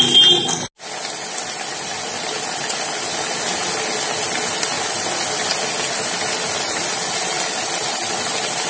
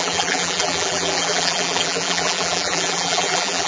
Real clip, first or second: first